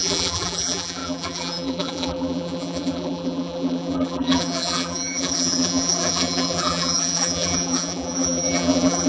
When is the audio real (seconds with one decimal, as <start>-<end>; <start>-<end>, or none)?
none